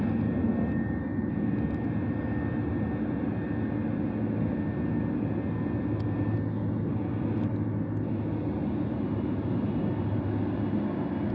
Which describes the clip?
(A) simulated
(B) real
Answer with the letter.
B